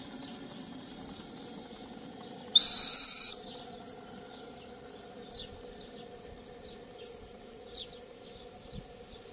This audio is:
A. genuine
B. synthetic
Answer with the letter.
A